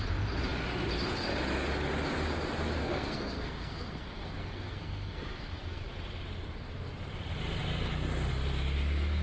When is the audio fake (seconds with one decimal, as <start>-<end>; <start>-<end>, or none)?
2.8-5.9